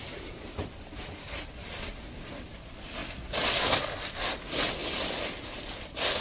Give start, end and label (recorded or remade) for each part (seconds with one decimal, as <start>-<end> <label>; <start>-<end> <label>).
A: 0.0-1.5 remade; 1.5-6.2 recorded

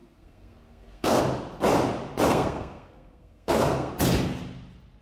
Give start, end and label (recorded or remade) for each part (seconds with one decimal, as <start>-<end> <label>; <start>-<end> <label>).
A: 0.0-1.2 remade; 1.2-2.3 recorded; 2.3-3.9 remade; 3.9-5.0 recorded